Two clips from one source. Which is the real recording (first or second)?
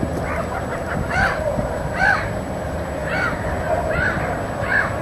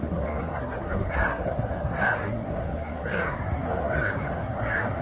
first